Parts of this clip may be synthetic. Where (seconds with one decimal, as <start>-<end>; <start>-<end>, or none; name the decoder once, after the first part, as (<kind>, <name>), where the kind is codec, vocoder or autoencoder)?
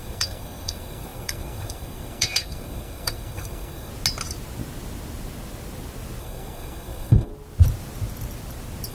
0.0-3.9 (codec, SNAC); 6.2-7.3